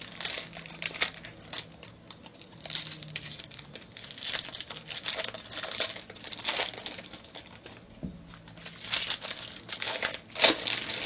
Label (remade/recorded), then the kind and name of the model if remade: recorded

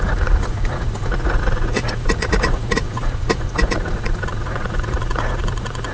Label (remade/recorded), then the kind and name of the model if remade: remade, vocoder, Vocos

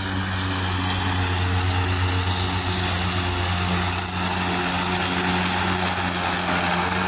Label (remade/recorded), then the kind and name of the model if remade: recorded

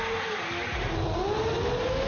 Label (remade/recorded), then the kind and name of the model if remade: recorded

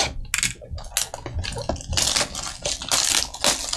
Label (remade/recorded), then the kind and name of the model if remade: recorded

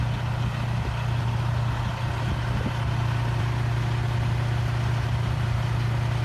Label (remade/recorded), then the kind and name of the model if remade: recorded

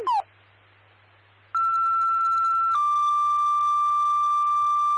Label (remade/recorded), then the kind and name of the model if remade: recorded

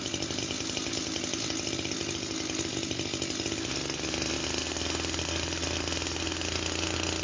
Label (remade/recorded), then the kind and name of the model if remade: recorded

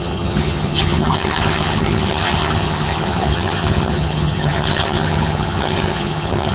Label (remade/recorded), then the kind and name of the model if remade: remade, vocoder, HiFi-GAN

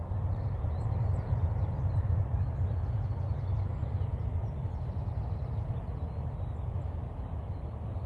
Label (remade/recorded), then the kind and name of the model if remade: recorded